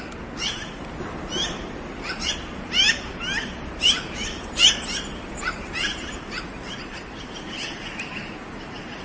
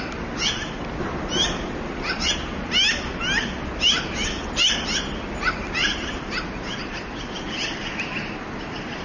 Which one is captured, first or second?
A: second